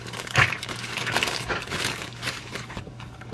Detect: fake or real fake